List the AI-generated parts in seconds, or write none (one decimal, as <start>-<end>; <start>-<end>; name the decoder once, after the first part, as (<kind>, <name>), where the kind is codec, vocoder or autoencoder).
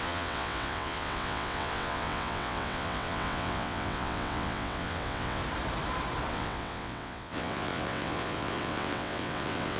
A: 0.0-5.4 (vocoder, WaveNeXt); 6.3-9.8